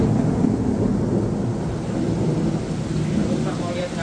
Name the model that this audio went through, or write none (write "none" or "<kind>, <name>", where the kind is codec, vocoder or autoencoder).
none